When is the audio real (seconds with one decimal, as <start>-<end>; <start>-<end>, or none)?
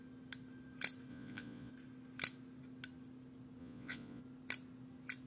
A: 0.0-1.1; 1.7-3.6; 4.2-5.3